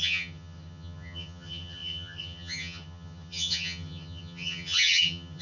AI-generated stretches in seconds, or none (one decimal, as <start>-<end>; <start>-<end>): 0.0-5.4